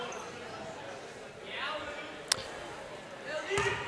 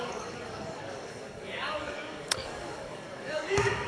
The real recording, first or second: first